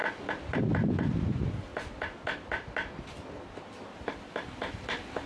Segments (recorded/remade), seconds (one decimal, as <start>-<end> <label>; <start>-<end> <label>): 0.0-1.7 remade; 1.7-3.7 recorded; 3.7-5.3 remade